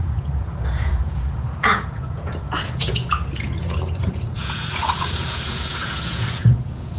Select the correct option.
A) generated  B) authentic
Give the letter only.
A